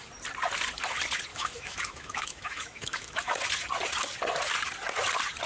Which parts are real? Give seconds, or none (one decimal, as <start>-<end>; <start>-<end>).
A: 0.0-1.3; 3.4-5.5